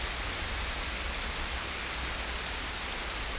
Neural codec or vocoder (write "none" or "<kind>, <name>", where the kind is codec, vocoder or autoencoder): none